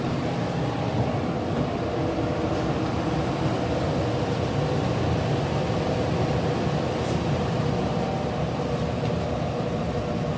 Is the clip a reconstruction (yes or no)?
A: no